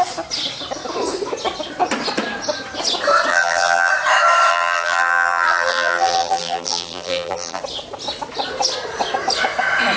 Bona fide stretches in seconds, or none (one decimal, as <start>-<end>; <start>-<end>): 0.0-3.3; 3.9-4.5; 7.6-10.0